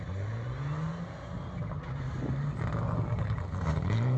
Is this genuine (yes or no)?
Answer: yes